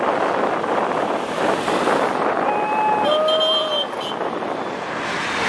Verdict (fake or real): real